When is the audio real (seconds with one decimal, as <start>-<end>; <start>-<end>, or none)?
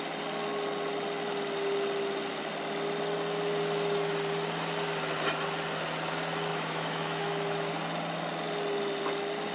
0.0-6.5; 7.7-9.5